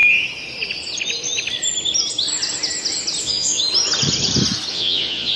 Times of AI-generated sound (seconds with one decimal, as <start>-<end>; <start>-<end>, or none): 3.2-3.6; 4.7-5.4